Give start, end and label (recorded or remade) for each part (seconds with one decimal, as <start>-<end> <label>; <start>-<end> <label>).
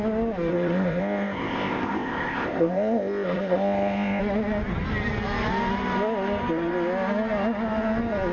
0.0-0.5 recorded; 0.5-4.2 remade; 4.2-8.3 recorded